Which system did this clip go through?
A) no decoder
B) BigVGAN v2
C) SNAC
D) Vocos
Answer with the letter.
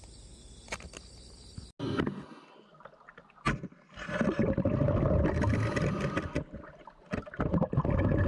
A